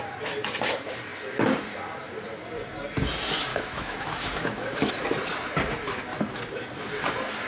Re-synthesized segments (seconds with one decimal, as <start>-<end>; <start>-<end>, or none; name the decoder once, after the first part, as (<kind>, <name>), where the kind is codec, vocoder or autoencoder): 3.5-4.9 (autoencoder, DAC-VAE)